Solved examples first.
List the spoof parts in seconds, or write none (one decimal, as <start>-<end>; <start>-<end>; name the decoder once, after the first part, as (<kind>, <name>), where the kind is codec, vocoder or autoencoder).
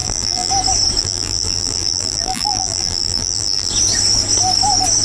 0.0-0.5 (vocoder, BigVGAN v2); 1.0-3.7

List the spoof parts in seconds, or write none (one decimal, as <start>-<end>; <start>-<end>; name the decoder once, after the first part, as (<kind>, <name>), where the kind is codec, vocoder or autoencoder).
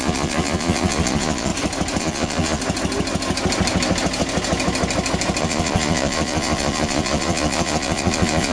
0.0-1.5 (vocoder, Vocos); 2.0-2.6; 5.4-8.5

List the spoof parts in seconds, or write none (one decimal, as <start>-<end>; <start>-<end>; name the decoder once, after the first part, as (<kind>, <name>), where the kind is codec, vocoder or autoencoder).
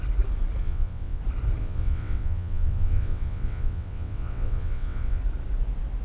0.6-1.2 (vocoder, WaveNeXt); 1.6-5.2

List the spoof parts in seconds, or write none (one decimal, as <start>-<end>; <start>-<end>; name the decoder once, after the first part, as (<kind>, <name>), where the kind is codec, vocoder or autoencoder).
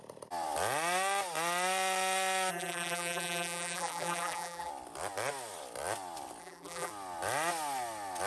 2.5-4.7 (vocoder, BigVGAN v2); 6.4-6.9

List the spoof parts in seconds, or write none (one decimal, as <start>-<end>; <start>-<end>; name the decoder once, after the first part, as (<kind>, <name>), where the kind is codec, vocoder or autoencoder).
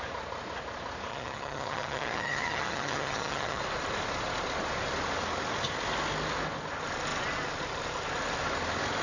1.1-3.6 (vocoder, HiFi-GAN)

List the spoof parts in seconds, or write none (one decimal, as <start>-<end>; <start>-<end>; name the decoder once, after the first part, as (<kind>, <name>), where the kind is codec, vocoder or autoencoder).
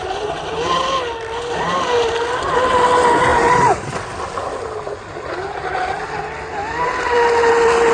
3.3-4.0 (vocoder, BigVGAN v2)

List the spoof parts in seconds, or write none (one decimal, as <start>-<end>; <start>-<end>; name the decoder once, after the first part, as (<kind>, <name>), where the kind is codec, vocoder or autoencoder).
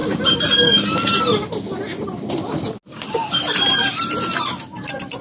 none